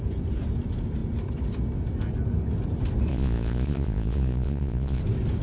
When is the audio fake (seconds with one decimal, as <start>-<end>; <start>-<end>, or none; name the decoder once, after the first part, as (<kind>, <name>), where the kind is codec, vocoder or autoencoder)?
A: 3.1-5.0 (vocoder, Vocos)